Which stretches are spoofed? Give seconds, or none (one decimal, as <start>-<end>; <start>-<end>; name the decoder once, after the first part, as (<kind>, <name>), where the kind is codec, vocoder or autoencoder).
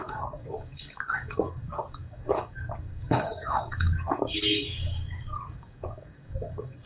0.0-6.9 (codec, DAC)